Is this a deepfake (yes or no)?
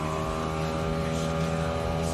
no